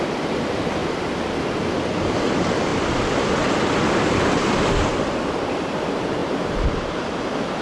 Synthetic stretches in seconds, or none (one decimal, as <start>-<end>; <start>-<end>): 0.0-7.6